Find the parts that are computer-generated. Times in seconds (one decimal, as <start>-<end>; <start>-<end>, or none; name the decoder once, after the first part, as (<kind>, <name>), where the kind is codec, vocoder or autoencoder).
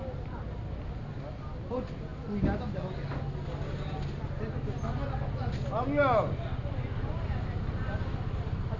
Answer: none